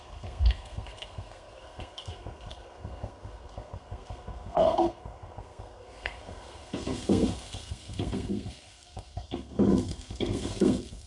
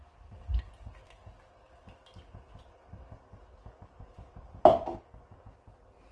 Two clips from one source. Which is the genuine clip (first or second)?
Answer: second